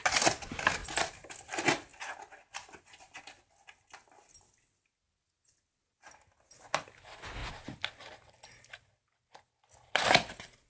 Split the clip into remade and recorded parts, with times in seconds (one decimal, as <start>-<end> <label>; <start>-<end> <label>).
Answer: 0.0-10.7 recorded